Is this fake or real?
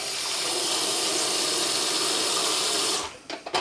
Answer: real